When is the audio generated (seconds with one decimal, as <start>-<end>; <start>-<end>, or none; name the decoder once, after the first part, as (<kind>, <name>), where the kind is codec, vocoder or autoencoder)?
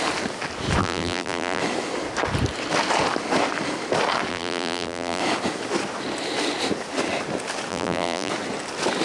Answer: 0.8-1.6 (vocoder, BigVGAN v2); 4.3-5.2; 7.7-8.3